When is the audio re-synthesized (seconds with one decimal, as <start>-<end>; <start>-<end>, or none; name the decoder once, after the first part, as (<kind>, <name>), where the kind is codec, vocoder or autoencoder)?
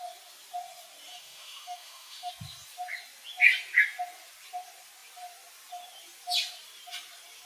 1.1-2.3 (autoencoder, DAC-VAE)